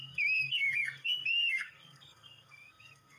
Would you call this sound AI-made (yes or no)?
yes